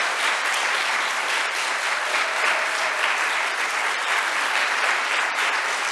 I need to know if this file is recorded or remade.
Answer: remade